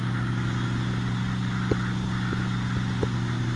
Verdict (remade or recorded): recorded